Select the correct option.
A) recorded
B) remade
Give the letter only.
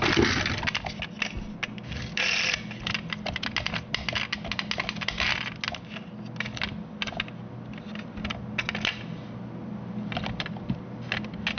A